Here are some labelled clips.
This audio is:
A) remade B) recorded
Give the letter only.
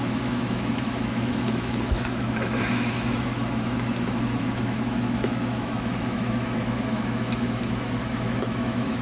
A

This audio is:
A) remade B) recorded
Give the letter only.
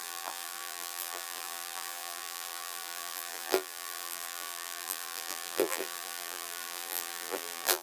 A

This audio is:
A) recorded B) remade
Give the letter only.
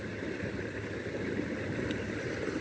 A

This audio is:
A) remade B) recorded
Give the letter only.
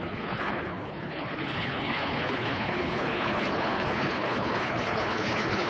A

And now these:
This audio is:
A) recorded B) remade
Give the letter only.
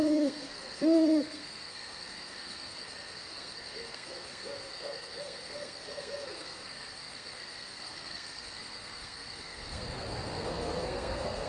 B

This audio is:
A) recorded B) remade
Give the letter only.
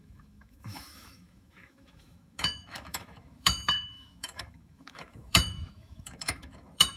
B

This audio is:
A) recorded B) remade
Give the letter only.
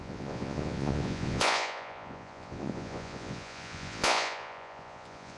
B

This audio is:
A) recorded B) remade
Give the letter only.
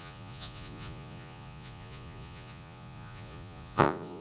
B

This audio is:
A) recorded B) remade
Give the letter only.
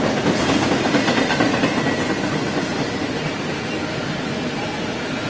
B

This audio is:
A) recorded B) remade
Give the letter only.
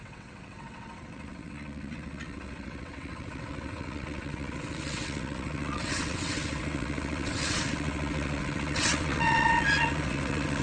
B